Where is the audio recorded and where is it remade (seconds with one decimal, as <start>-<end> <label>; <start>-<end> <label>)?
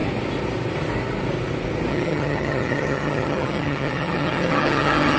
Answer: 0.0-1.9 recorded; 1.9-5.2 remade